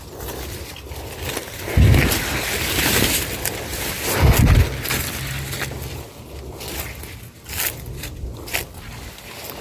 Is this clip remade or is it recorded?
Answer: recorded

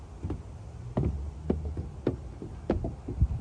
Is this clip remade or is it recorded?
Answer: recorded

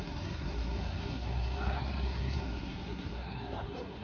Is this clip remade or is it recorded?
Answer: remade